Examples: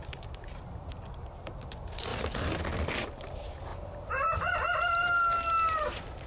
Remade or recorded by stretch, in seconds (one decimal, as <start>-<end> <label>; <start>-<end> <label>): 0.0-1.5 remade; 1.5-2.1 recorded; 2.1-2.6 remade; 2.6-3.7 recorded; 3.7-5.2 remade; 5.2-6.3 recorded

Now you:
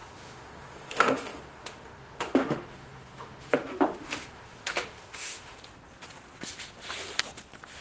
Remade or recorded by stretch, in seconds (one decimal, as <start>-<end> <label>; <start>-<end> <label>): 0.0-5.6 remade; 5.6-7.8 recorded

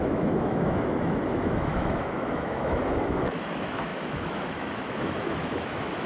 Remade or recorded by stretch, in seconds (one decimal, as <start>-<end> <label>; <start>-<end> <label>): 0.0-6.1 remade

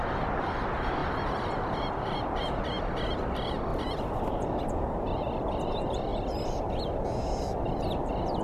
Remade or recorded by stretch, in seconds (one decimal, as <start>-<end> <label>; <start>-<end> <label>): 0.0-1.0 recorded; 1.0-2.4 remade; 2.4-3.7 recorded; 3.7-4.2 remade; 4.2-6.1 recorded; 6.1-6.8 remade; 6.8-8.4 recorded

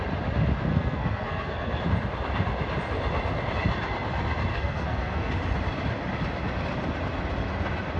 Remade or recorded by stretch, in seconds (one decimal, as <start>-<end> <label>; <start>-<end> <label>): 0.0-0.7 recorded; 0.7-1.8 remade; 1.8-4.5 recorded; 4.5-5.3 remade; 5.3-8.0 recorded

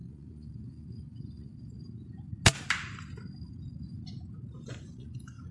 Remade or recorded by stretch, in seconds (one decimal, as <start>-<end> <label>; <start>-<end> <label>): 0.0-1.5 remade; 1.5-4.6 recorded; 4.6-5.5 remade